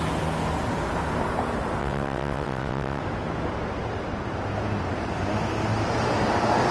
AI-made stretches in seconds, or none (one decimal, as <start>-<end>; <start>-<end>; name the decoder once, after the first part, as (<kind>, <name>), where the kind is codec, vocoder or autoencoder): 1.8-3.0 (vocoder, WaveNeXt)